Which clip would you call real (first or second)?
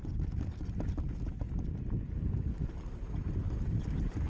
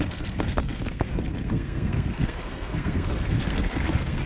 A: first